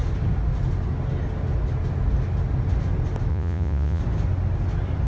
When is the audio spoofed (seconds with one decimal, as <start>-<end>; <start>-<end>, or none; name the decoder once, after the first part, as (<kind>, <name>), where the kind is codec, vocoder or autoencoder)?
3.3-4.0 (vocoder, Vocos)